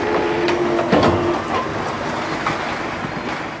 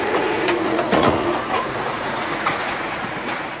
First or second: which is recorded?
first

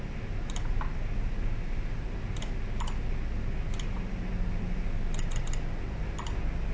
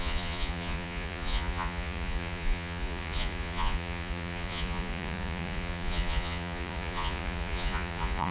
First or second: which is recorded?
first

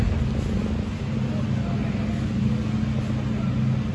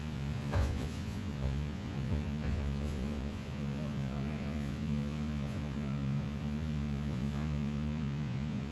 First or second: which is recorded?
first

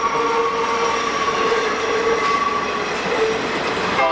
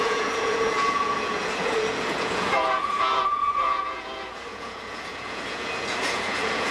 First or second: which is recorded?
first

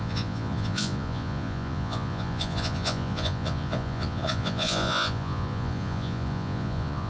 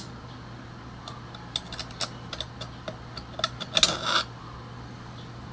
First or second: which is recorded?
second